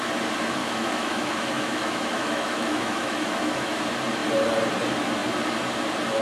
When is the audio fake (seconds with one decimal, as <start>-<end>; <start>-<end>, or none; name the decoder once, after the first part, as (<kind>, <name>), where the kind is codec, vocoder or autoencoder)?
0.6-3.8 (autoencoder, DAC-VAE)